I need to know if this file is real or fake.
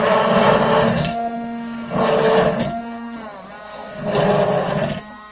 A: real